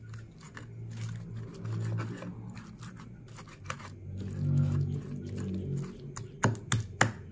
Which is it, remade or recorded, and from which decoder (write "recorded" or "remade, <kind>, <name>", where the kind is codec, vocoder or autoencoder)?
recorded